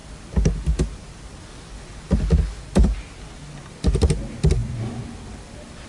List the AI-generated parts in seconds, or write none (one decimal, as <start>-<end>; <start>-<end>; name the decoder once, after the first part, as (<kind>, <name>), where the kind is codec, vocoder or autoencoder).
none